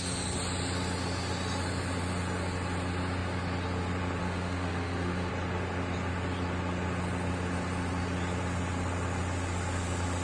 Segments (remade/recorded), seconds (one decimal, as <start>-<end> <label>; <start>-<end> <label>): 0.0-4.2 recorded; 4.2-5.3 remade; 5.3-10.2 recorded